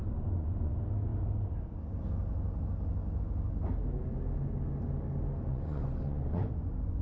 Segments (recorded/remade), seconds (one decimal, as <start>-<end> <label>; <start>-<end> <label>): 0.0-0.7 remade; 0.7-5.5 recorded; 5.5-7.0 remade